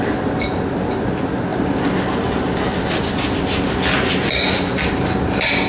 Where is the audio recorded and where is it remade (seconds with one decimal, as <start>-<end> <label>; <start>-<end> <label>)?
0.0-5.7 recorded